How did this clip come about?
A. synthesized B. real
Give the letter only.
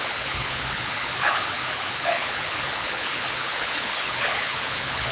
A